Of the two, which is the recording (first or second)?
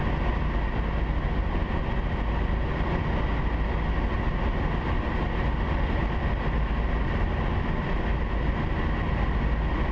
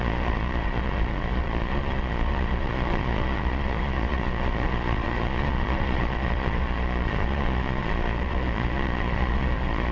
first